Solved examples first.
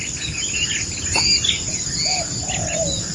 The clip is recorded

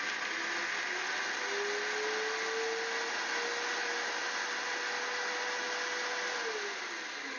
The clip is recorded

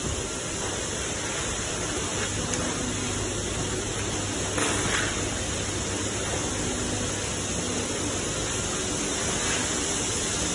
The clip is recorded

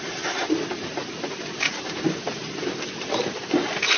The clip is recorded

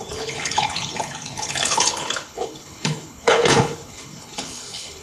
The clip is remade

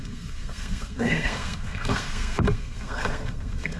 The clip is remade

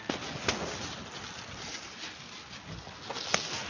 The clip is recorded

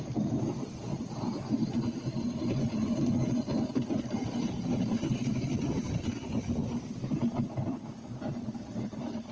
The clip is remade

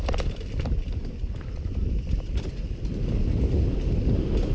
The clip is recorded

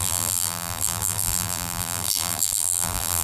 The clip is remade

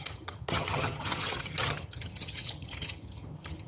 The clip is remade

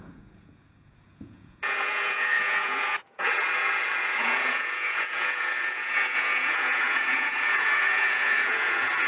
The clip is remade